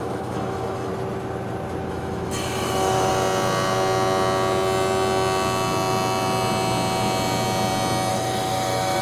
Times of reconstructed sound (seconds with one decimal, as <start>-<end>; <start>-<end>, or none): 0.0-0.9; 1.9-3.1; 8.1-9.0